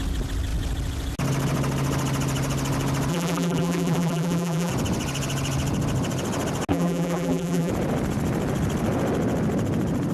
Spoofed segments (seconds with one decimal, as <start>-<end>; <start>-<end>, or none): 3.1-4.7; 6.7-7.7